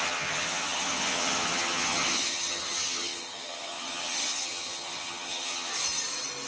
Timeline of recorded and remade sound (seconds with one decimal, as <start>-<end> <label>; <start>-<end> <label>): 0.0-5.7 remade; 5.7-6.5 recorded